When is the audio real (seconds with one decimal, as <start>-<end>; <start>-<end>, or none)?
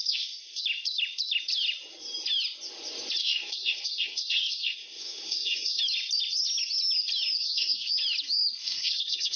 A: 0.6-3.2; 5.8-7.4; 7.9-8.6